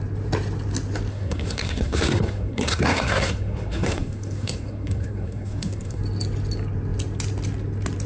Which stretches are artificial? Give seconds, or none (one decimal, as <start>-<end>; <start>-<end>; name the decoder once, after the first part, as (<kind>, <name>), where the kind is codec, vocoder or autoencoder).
1.1-6.0 (codec, SNAC)